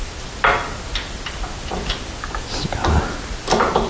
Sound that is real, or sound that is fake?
real